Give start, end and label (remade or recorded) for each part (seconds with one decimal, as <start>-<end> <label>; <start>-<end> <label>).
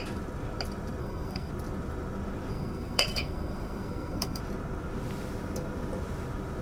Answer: 0.0-1.0 recorded; 1.0-1.5 remade; 1.5-2.5 recorded; 2.5-4.4 remade; 4.4-6.6 recorded